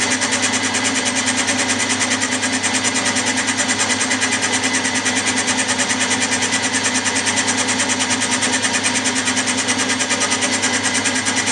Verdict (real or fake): real